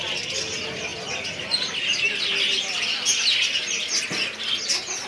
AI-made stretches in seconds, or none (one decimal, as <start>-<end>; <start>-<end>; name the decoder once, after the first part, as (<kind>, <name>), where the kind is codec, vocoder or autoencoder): none